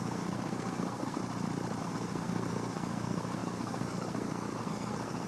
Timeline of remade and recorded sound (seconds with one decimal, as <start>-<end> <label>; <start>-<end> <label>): 0.0-1.2 remade; 1.2-1.8 recorded; 1.8-5.3 remade